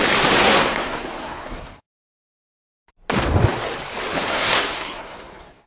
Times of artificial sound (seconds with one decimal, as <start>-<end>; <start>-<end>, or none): 0.4-2.2; 4.3-5.7